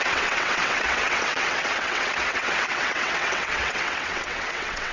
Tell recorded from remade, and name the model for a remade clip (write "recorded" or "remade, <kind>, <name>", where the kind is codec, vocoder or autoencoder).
remade, vocoder, WaveNeXt